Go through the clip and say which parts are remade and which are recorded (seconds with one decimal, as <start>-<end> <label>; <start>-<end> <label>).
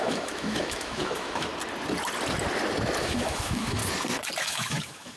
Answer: 0.0-1.5 remade; 1.5-3.0 recorded; 3.0-3.8 remade; 3.8-4.4 recorded; 4.4-5.2 remade